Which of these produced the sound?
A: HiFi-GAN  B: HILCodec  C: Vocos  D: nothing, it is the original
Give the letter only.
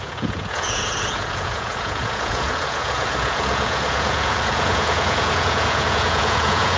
C